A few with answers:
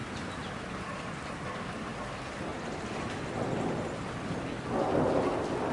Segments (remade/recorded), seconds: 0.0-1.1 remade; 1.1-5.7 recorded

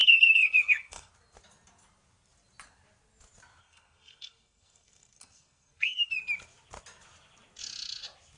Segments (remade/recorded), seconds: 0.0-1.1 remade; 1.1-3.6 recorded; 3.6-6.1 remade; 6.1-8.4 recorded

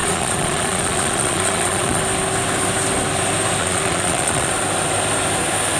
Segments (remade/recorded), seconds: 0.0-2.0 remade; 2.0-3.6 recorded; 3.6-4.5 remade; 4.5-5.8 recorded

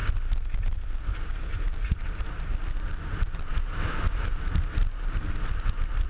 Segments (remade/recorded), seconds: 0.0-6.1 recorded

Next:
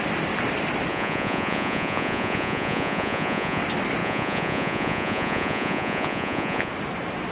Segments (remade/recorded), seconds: 0.0-0.9 recorded; 0.9-3.6 remade; 3.6-4.0 recorded; 4.0-6.7 remade; 6.7-7.3 recorded